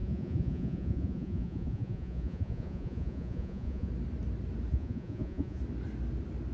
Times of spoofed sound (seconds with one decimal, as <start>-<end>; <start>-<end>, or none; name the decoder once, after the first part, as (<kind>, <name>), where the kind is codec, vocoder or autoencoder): 0.0-3.9 (vocoder, Vocos); 4.7-5.6